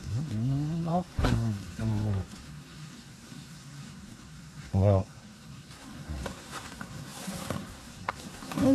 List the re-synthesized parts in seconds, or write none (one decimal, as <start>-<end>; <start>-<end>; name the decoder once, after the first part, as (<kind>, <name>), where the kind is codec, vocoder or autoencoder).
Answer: 0.0-8.7 (codec, SNAC)